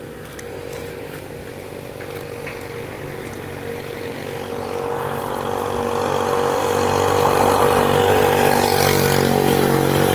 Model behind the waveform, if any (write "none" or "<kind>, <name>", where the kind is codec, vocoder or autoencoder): none